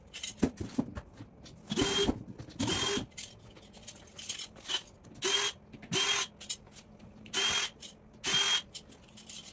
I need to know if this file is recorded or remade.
recorded